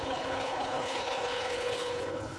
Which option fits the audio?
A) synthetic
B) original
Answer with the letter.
A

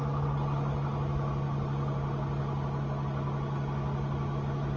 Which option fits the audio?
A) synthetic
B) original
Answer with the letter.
B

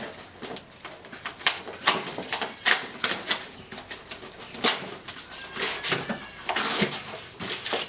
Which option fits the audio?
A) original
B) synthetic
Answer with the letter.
A